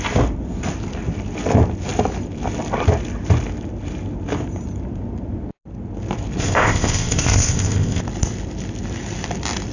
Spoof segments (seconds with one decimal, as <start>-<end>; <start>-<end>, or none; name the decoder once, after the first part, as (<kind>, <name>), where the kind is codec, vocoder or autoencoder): 6.4-8.0 (codec, ZipCodec)